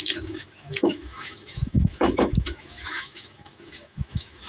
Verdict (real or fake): fake